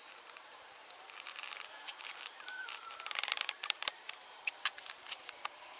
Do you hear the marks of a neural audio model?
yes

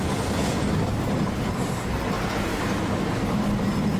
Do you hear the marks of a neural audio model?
yes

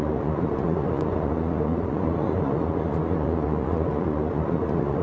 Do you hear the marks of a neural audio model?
yes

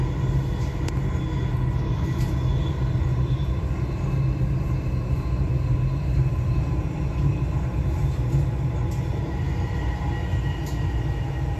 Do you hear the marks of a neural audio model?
no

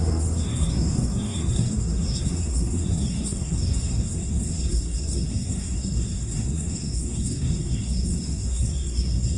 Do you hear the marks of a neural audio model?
yes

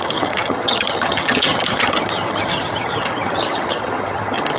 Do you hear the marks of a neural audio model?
yes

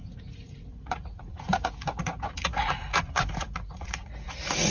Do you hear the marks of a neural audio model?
yes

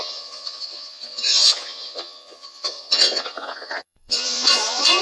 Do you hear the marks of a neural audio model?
yes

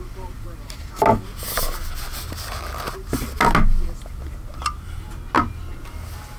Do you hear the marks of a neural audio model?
no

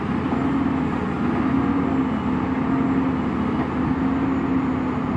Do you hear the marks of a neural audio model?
no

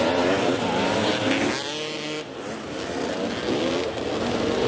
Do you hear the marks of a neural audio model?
no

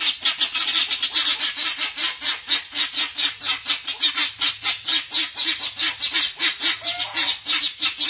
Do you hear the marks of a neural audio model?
no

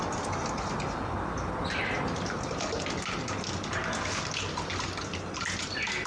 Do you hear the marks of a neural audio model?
no